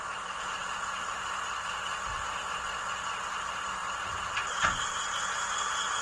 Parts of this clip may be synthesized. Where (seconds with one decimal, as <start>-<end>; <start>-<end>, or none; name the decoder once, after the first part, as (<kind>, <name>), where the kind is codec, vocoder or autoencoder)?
none